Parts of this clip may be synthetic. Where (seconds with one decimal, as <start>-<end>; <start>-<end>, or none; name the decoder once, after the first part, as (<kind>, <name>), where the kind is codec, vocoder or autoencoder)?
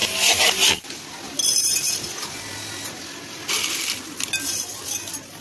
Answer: none